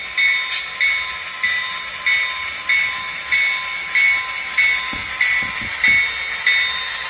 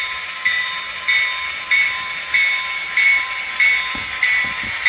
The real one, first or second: first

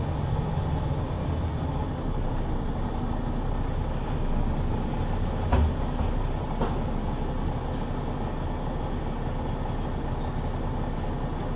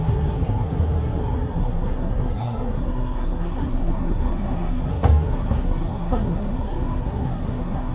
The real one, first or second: first